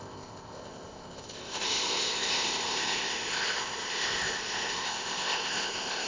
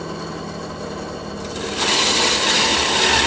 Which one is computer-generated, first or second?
first